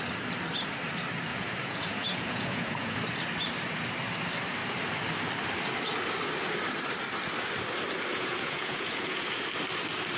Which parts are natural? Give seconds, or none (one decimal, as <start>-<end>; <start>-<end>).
0.0-1.3; 3.0-8.1; 9.4-10.2